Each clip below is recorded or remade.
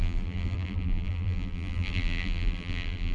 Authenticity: remade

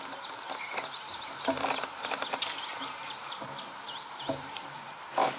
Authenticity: recorded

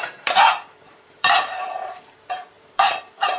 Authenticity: remade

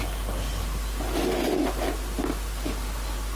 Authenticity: recorded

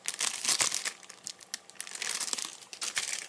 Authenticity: recorded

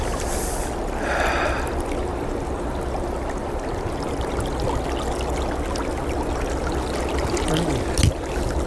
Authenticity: recorded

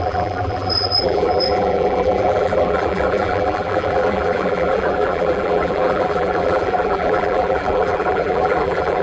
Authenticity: remade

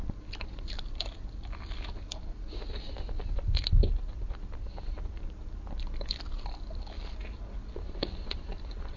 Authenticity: recorded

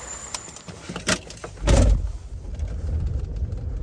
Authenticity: recorded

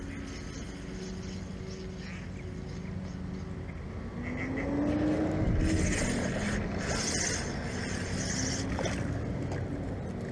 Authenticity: recorded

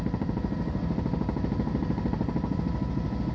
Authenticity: remade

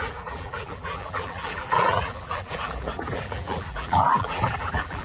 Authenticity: remade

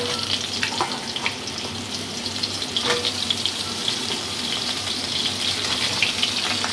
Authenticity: remade